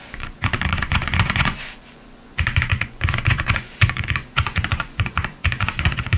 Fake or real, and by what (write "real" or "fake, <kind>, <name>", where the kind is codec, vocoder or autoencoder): fake, vocoder, Vocos